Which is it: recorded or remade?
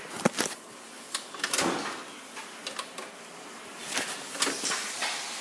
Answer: recorded